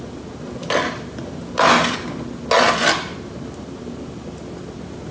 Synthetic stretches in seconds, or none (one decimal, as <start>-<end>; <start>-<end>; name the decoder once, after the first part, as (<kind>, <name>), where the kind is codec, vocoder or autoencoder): none